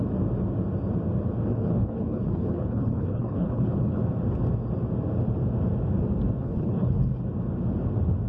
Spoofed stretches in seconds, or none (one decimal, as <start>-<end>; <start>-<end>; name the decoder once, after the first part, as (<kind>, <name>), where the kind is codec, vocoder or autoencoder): 1.5-4.0 (codec, HILCodec); 6.4-7.2

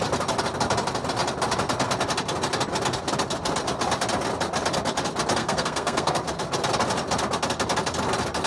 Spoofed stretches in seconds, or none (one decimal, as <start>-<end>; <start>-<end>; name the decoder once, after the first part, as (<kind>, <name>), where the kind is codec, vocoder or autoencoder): 5.4-6.2 (codec, SNAC)

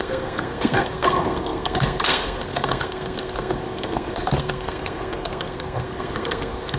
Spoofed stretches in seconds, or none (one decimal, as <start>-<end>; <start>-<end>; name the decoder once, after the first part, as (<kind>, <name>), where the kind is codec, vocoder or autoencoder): 0.0-6.8 (codec, SNAC)

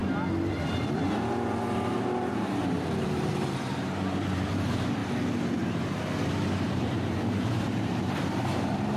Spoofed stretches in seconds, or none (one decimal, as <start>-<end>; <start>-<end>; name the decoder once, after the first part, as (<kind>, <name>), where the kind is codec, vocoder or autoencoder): 0.5-5.0 (vocoder, BigVGAN v2); 5.7-9.0

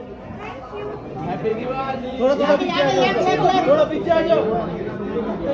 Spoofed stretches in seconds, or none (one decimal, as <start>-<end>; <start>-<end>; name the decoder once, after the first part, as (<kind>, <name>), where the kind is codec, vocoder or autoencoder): 1.5-2.6 (autoencoder, DAC-VAE); 4.0-4.9

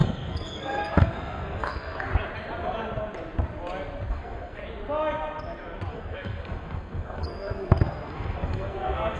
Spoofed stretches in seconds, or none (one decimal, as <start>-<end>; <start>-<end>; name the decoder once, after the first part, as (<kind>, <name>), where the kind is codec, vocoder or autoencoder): 0.0-2.1 (codec, SNAC); 4.1-4.6; 5.9-9.2